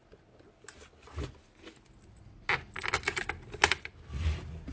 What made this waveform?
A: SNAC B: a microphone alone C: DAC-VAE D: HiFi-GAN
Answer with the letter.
B